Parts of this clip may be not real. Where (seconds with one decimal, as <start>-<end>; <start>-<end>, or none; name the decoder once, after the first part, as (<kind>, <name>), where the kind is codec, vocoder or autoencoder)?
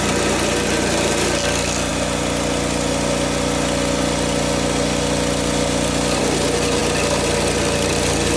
none